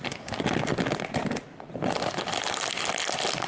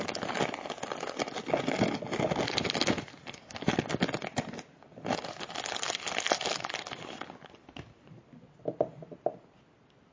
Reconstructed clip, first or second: first